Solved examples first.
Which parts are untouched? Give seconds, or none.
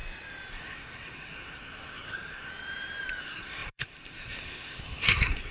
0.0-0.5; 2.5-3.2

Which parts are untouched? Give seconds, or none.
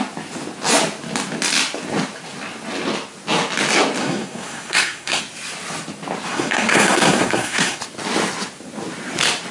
0.0-4.0; 5.2-6.3; 7.8-9.5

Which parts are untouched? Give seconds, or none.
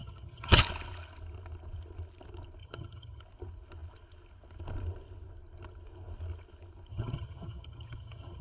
0.6-2.6; 3.2-6.9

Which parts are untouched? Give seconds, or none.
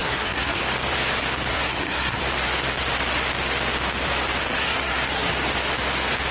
0.6-1.5; 2.2-4.5; 5.3-6.3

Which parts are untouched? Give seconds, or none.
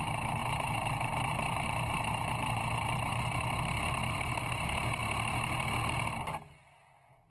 5.0-7.3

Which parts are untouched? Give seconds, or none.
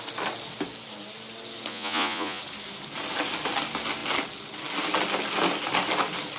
0.0-1.7; 2.4-6.4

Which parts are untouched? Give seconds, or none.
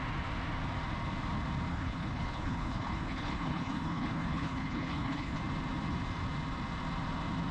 0.0-1.7; 5.4-7.5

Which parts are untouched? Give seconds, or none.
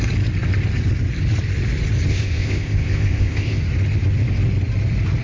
0.0-2.1; 3.6-5.2